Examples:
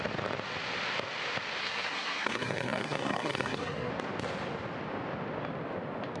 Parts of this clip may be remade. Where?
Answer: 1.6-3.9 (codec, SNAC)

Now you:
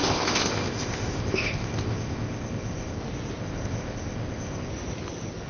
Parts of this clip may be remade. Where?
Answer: 0.0-3.0 (codec, ZipCodec); 3.4-4.7

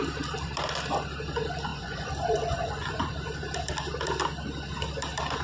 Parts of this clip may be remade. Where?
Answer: 1.7-3.1 (vocoder, Vocos)

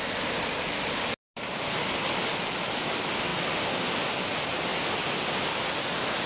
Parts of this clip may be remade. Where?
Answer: none